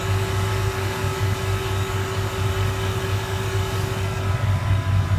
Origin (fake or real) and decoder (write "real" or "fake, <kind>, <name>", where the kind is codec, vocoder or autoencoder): fake, codec, DAC